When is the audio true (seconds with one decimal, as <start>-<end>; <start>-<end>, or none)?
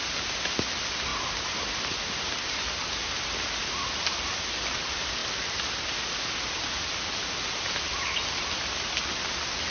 0.0-9.7